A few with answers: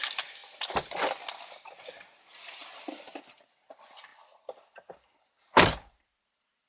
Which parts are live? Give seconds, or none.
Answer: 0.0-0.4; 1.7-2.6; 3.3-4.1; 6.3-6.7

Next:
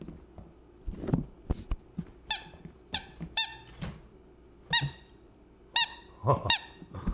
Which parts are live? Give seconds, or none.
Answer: 0.0-7.1